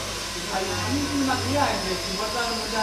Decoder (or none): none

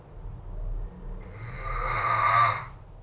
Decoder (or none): none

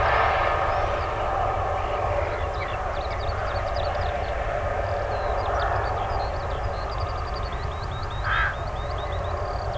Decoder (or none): none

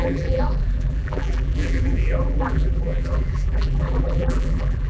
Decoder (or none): vocoder, BigVGAN v2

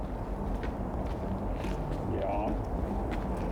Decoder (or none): none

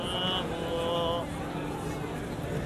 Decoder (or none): none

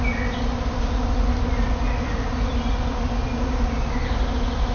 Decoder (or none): none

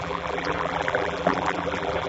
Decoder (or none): vocoder, BigVGAN v2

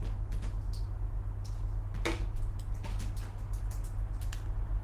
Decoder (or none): none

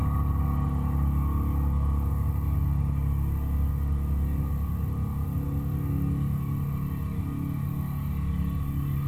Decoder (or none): none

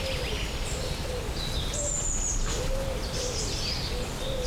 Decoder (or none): none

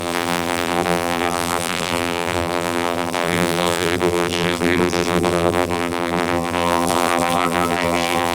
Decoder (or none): vocoder, BigVGAN v2